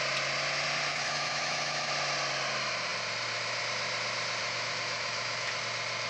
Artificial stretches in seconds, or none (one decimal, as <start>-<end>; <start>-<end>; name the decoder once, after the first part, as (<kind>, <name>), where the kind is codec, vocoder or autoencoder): 0.9-1.9 (autoencoder, DAC-VAE); 4.4-5.6